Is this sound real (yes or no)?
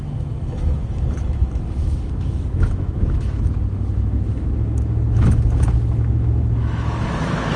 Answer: no